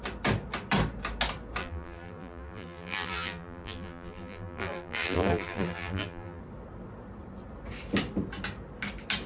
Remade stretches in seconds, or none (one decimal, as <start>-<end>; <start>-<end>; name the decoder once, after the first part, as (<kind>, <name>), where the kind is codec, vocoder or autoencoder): 1.6-6.4 (vocoder, BigVGAN v2)

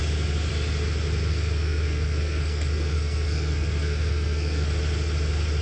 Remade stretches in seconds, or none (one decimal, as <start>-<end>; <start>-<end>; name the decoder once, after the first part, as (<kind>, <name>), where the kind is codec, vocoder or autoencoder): 1.3-4.7 (codec, SNAC)

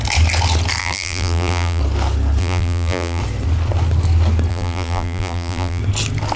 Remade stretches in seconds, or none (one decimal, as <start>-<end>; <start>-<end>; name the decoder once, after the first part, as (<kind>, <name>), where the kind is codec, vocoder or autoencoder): 0.8-1.8 (vocoder, BigVGAN v2); 2.4-3.2; 4.5-5.8

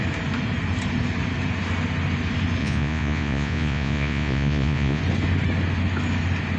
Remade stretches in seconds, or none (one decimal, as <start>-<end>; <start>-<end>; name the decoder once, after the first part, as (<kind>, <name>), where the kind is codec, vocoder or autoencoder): 2.6-5.0 (vocoder, Vocos)

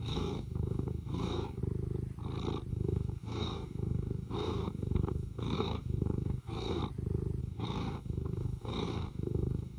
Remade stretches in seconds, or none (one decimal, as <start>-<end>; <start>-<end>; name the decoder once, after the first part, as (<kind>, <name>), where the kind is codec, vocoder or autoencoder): 0.0-1.6 (codec, DAC); 2.7-6.8; 7.4-9.8

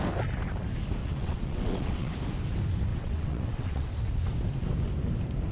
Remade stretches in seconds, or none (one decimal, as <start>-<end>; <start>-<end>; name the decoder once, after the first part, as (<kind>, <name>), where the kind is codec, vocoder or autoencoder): 1.0-2.1 (vocoder, WaveNeXt); 2.9-3.9